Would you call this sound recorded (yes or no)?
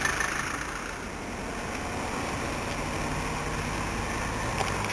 yes